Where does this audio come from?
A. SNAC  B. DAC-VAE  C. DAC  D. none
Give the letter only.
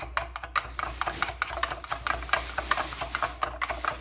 D